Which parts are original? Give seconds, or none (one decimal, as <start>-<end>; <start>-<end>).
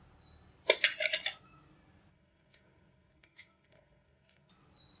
0.0-2.1; 4.5-5.0